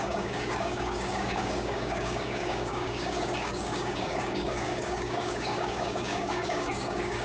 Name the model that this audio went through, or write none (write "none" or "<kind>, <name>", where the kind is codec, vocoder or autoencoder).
codec, DAC